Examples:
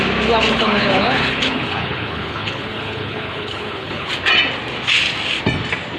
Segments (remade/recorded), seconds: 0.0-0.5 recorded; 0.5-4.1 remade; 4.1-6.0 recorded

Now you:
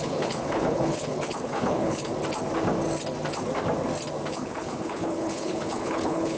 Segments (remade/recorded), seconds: 0.0-2.1 remade; 2.1-4.3 recorded; 4.3-6.4 remade

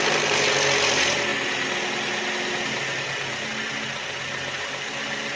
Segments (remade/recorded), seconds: 0.0-5.4 recorded